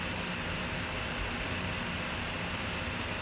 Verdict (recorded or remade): recorded